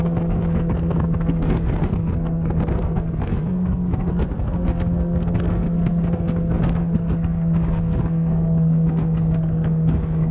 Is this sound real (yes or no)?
no